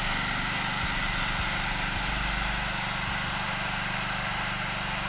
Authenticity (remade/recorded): remade